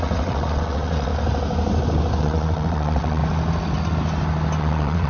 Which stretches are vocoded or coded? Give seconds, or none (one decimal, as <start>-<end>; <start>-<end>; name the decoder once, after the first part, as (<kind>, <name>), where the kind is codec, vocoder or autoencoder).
0.0-1.1 (vocoder, WaveNeXt); 2.2-3.2; 4.6-5.1